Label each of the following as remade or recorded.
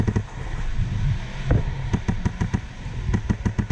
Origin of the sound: recorded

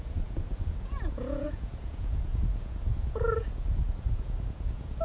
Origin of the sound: remade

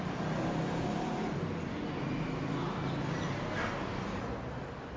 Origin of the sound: recorded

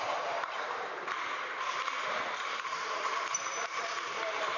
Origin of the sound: remade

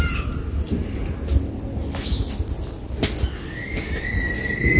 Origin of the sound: recorded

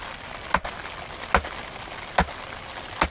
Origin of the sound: recorded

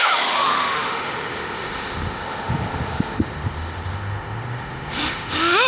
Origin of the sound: remade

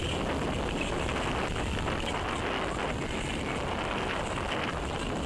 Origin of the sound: recorded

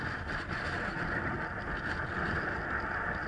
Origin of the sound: recorded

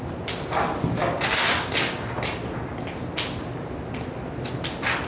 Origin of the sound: recorded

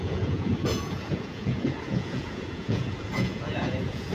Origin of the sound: remade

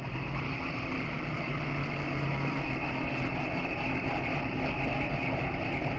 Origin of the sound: recorded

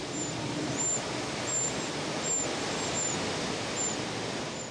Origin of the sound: recorded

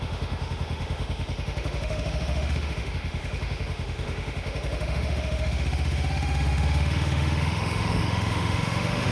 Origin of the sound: remade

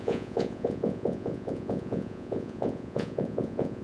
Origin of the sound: remade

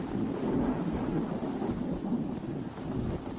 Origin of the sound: recorded